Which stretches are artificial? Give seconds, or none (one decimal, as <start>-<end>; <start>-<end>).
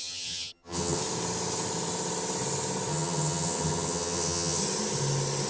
0.0-1.0; 2.9-4.6